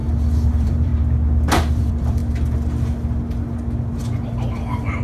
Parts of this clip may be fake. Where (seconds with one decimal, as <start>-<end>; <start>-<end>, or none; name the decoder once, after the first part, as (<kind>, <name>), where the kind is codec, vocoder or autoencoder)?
0.0-0.9 (vocoder, BigVGAN v2); 1.7-2.2; 4.0-5.0